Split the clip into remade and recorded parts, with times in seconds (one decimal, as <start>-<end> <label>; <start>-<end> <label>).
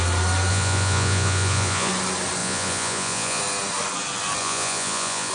0.0-0.5 recorded; 0.5-1.9 remade; 1.9-2.4 recorded; 2.4-3.4 remade; 3.4-4.4 recorded; 4.4-5.3 remade